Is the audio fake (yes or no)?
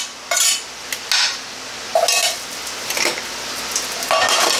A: no